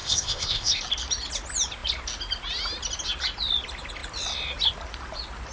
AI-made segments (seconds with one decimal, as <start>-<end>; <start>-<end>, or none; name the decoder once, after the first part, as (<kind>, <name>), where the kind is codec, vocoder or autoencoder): 0.0-0.8 (codec, ZipCodec)